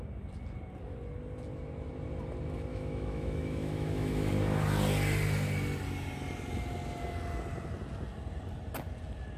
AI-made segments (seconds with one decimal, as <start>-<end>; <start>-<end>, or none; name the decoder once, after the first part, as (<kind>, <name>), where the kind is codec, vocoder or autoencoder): 2.7-4.3 (autoencoder, DAC-VAE)